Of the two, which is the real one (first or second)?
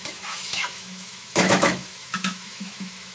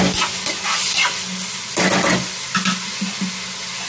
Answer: second